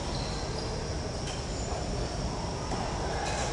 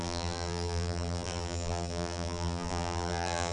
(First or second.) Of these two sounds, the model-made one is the second